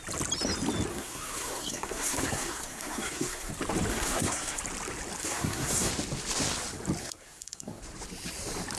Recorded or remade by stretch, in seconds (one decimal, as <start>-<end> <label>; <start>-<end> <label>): 0.0-0.9 recorded; 0.9-3.5 remade; 3.5-3.9 recorded; 3.9-4.6 remade; 4.6-5.2 recorded; 5.2-5.9 remade; 5.9-7.0 recorded; 7.0-7.8 remade; 7.8-8.8 recorded